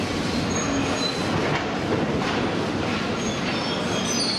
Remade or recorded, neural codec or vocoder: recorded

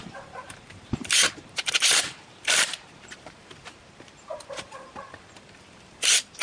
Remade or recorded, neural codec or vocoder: remade, vocoder, BigVGAN v2